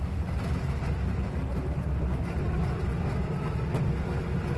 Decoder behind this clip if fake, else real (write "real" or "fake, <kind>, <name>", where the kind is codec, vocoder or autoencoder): real